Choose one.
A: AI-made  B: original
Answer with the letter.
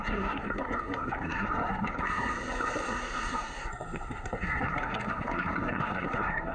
A